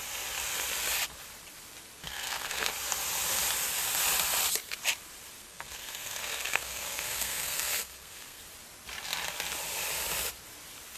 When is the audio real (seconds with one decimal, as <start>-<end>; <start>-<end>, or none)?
0.0-2.0; 2.7-5.4; 8.4-11.0